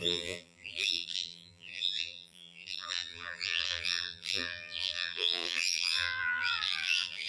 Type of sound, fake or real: fake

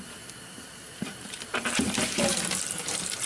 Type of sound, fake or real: fake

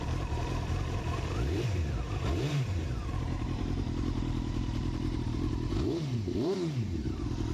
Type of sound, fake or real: fake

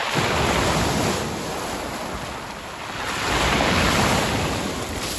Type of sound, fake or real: real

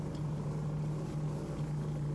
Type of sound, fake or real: real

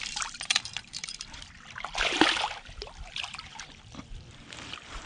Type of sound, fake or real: fake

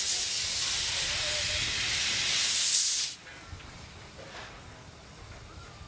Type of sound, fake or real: real